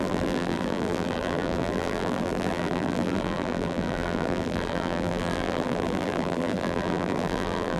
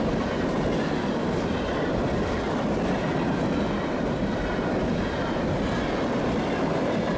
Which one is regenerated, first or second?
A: first